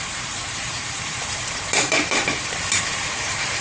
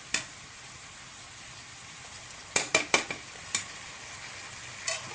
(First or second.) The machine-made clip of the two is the first